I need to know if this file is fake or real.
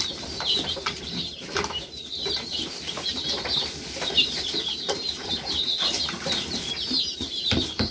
fake